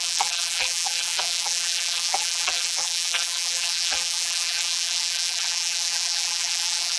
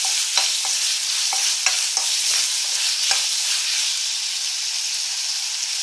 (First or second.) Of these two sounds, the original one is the second